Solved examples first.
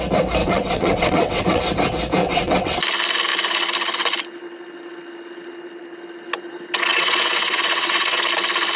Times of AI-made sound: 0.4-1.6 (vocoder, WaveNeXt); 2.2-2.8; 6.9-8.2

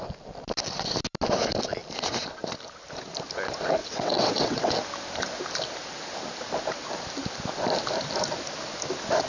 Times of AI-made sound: 3.8-4.7 (vocoder, WaveNeXt)

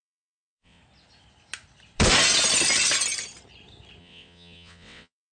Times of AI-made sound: 0.0-0.8 (vocoder, WaveNeXt); 4.0-5.3

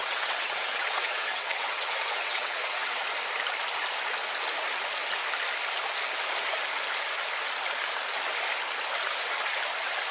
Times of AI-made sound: 0.0-3.0 (vocoder, WaveNeXt)